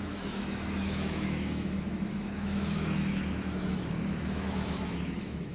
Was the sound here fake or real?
fake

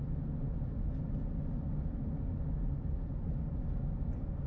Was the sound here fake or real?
real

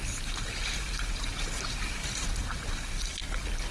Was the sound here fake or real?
real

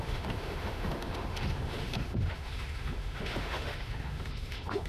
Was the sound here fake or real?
fake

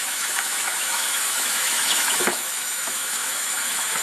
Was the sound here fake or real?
fake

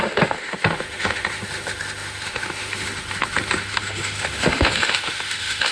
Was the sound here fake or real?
fake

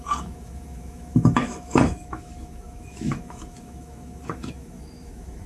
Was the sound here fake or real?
fake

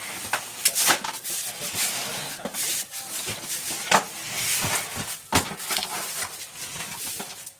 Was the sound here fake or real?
real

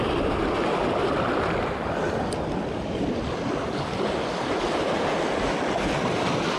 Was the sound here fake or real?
real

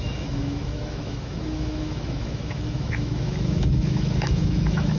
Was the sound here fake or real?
fake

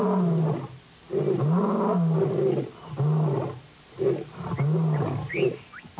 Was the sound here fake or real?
real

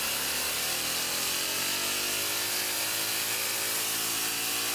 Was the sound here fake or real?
real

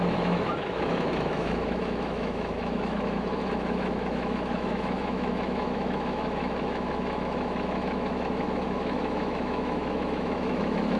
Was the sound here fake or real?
fake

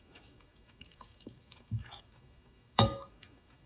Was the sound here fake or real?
fake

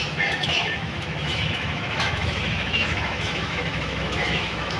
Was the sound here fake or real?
fake